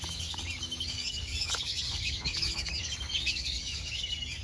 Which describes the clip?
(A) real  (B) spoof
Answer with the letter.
B